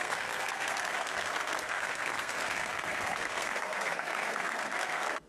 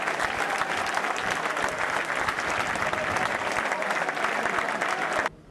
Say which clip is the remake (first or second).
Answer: first